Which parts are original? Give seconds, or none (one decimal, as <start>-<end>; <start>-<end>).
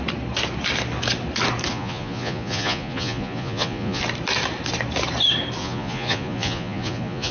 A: 0.0-1.7; 4.0-5.6